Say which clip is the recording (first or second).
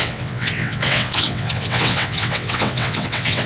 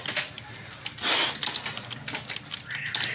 second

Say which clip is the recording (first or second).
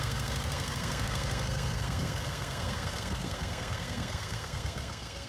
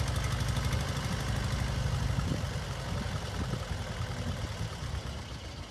second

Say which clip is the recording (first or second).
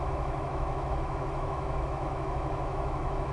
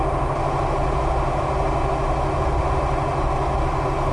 second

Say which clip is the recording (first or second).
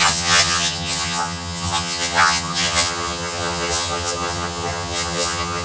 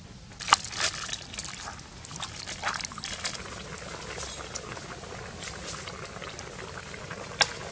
second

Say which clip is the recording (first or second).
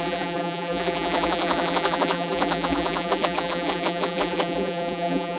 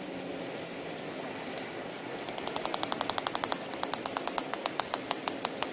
second